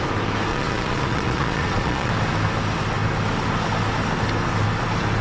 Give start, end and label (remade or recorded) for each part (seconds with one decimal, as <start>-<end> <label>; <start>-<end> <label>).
0.0-0.5 recorded; 0.5-2.1 remade; 2.1-5.2 recorded